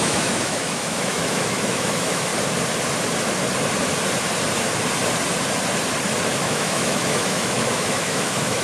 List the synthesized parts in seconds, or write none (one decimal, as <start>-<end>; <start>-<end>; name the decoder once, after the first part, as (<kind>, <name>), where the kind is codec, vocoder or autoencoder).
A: 0.0-2.3 (autoencoder, DAC-VAE); 6.4-8.6